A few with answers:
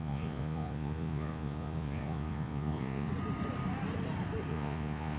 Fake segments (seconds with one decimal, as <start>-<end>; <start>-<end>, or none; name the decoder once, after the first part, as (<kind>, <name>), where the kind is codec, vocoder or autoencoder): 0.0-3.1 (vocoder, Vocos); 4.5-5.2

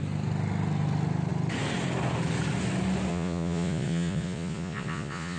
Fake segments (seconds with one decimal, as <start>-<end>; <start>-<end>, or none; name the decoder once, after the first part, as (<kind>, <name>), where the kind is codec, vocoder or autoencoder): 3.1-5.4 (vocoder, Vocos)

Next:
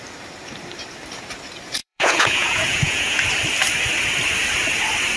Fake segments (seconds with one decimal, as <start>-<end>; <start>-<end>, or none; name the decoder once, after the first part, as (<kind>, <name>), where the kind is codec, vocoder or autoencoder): 1.8-3.2 (vocoder, Vocos)